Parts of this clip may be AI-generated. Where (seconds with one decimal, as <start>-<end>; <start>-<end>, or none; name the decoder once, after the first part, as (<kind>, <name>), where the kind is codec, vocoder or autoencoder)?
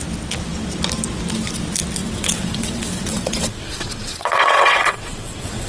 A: 2.0-5.7 (vocoder, WaveNeXt)